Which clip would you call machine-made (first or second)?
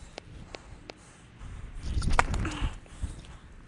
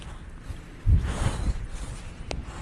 first